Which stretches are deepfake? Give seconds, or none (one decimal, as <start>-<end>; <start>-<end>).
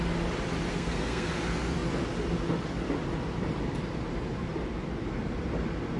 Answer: 0.7-1.3